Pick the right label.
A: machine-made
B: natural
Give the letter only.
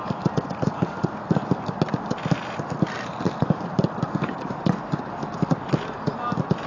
B